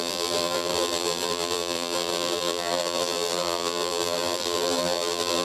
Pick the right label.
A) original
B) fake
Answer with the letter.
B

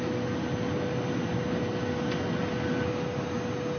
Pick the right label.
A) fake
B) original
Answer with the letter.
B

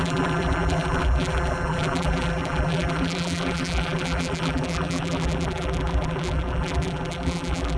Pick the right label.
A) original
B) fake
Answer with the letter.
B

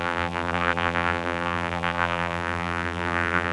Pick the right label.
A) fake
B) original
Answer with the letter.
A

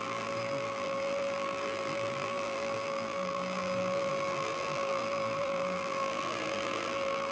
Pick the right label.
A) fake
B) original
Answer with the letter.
A